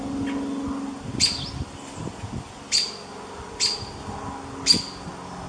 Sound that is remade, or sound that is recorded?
recorded